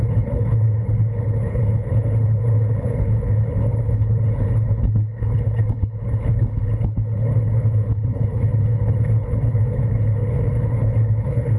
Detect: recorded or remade remade